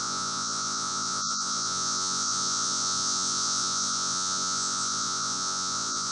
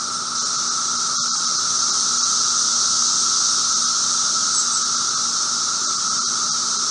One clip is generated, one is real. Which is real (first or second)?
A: second